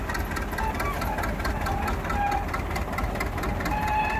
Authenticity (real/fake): real